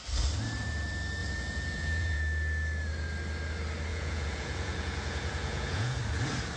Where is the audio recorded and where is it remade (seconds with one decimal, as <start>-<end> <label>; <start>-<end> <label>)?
0.0-1.2 recorded; 1.2-2.2 remade; 2.2-3.9 recorded; 3.9-6.0 remade; 6.0-6.6 recorded